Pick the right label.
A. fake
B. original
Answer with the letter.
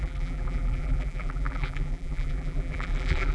A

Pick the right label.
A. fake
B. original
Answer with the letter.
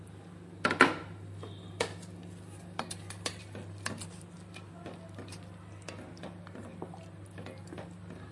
A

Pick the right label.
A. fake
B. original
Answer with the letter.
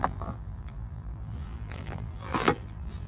A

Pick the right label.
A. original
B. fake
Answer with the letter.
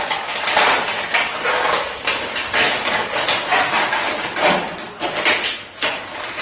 B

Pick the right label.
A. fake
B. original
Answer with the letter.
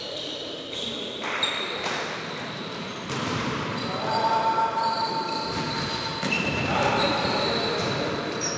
A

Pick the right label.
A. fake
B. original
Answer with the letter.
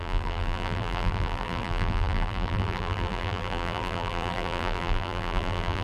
A